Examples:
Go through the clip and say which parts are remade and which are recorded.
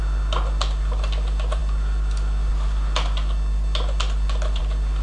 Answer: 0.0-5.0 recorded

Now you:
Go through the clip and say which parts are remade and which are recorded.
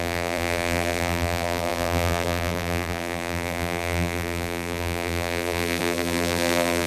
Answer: 0.0-6.9 remade